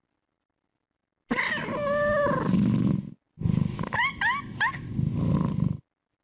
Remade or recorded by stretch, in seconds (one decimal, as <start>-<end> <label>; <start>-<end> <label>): 0.0-6.2 recorded